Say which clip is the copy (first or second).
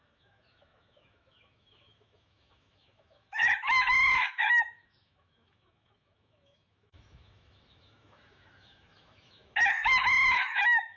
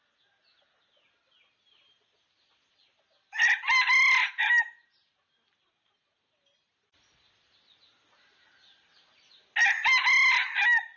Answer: first